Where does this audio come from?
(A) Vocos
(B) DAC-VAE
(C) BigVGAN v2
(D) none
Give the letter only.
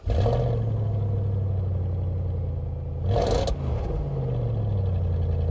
D